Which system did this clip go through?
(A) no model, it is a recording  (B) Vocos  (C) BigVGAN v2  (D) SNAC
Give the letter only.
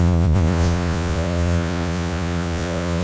B